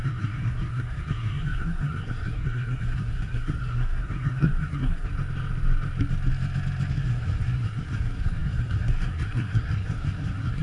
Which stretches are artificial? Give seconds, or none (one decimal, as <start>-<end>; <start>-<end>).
0.0-5.1; 6.9-10.6